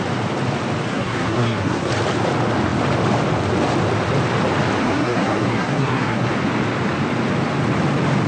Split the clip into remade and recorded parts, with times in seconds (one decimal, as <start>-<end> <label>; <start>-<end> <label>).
0.0-0.9 recorded; 0.9-1.9 remade; 1.9-4.8 recorded; 4.8-6.3 remade; 6.3-8.3 recorded